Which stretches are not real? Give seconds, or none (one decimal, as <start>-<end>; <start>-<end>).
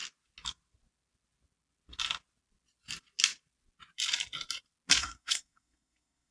5.0-6.3